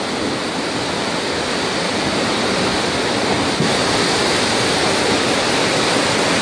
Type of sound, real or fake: real